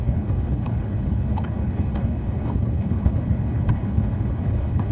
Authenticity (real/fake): fake